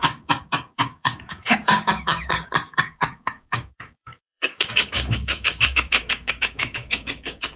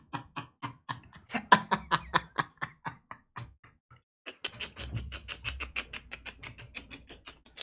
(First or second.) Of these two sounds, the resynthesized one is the first